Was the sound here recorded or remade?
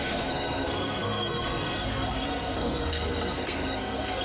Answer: remade